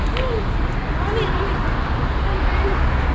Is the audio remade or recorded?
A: recorded